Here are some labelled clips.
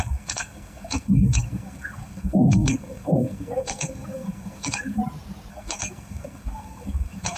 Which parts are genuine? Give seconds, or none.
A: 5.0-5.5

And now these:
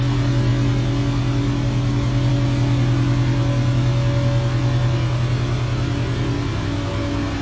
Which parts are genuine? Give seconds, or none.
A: 0.0-7.4